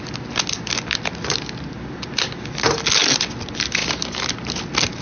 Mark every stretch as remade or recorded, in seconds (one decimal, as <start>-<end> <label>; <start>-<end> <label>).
0.0-5.0 recorded